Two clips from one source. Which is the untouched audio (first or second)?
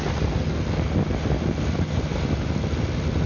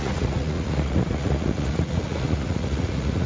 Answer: first